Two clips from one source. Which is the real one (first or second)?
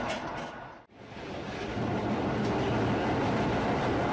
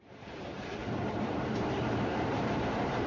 first